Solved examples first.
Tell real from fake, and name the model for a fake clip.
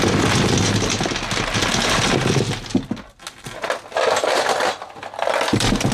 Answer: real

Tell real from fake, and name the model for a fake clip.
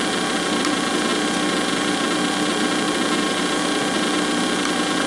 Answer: real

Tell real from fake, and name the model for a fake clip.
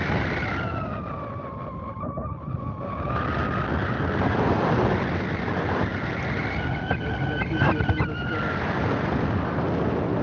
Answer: real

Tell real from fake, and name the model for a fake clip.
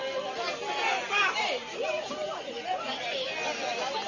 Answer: real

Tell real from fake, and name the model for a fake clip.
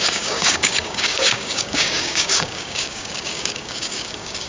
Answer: fake, codec, DAC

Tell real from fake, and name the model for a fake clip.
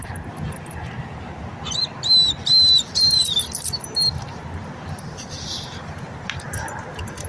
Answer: real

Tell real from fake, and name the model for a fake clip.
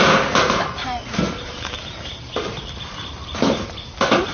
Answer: fake, vocoder, BigVGAN v2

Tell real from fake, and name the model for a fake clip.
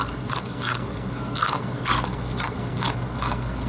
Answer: fake, codec, SNAC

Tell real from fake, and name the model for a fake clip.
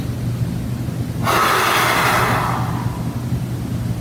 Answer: real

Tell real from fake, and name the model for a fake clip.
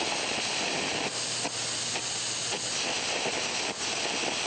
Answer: real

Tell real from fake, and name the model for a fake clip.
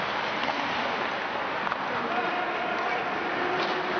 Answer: real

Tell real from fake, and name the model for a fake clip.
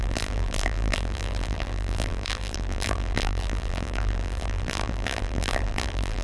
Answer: fake, vocoder, BigVGAN v2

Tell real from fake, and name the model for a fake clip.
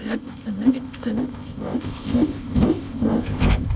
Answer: fake, codec, ZipCodec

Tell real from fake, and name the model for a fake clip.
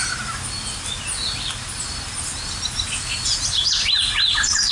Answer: real